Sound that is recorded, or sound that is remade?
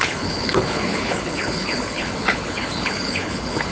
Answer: remade